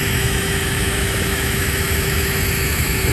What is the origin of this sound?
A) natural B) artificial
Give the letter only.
B